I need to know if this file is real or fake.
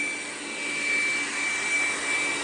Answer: real